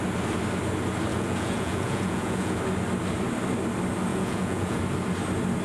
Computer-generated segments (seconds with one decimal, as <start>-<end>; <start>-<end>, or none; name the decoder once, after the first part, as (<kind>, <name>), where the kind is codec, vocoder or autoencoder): 1.1-2.6 (vocoder, Vocos); 4.1-4.8